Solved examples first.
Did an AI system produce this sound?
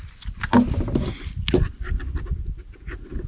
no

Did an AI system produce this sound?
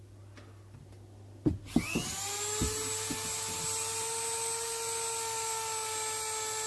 no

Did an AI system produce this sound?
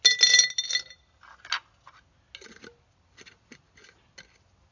no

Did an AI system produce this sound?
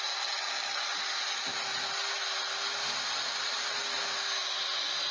no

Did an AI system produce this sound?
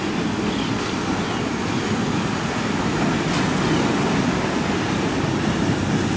no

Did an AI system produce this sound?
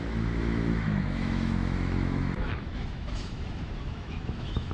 yes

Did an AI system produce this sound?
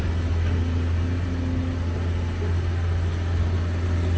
no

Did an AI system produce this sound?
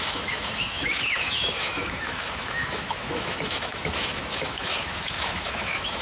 yes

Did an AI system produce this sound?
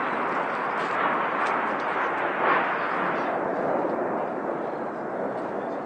no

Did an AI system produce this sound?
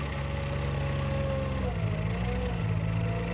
no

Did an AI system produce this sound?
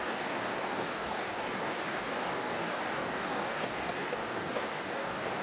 yes